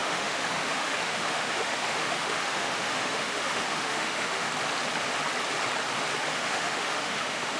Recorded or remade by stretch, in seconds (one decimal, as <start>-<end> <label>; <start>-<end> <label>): 0.0-4.5 remade; 4.5-6.3 recorded; 6.3-7.6 remade

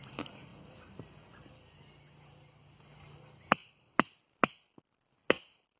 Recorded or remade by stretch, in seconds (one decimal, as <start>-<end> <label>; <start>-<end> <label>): 0.0-5.8 recorded

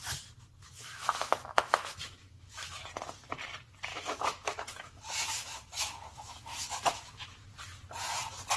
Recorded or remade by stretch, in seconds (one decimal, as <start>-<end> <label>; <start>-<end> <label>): 0.0-0.6 recorded; 0.6-2.9 remade; 2.9-3.9 recorded; 3.9-7.5 remade; 7.5-8.6 recorded

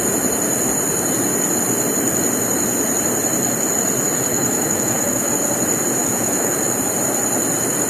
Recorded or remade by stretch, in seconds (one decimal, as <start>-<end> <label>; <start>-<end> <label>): 0.0-4.3 recorded; 4.3-5.3 remade; 5.3-6.0 recorded; 6.0-6.6 remade; 6.6-7.9 recorded

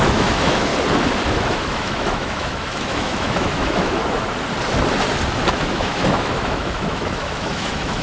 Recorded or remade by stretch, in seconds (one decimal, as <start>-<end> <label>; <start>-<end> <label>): 0.0-0.7 remade; 0.7-1.3 recorded; 1.3-4.0 remade; 4.0-5.5 recorded; 5.5-8.0 remade

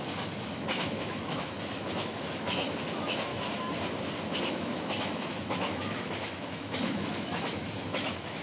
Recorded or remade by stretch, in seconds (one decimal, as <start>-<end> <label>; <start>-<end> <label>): 0.0-3.3 remade; 3.3-4.5 recorded; 4.5-8.4 remade